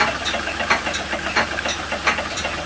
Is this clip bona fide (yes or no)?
yes